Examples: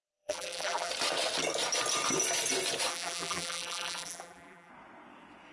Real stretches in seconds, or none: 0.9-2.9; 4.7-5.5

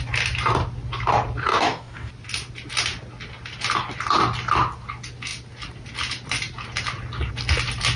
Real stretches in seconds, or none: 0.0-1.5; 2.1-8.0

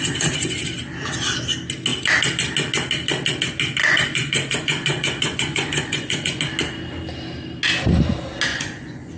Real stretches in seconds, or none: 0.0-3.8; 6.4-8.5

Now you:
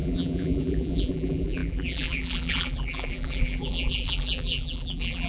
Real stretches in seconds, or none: none

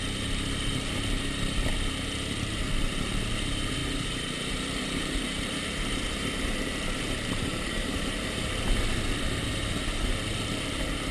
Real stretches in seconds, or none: 0.0-1.7; 2.6-3.8; 8.5-11.1

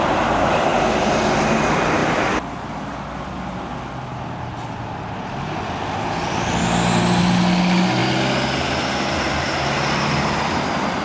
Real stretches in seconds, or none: 0.0-11.0

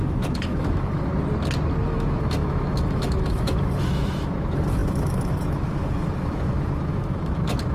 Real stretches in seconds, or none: 1.1-1.8

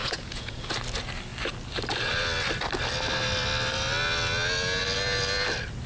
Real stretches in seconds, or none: 0.6-5.9